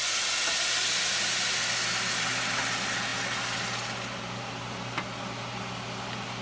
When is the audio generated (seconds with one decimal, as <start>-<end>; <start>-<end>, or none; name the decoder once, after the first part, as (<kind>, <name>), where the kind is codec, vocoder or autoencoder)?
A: none